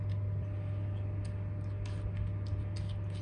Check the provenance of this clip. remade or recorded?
recorded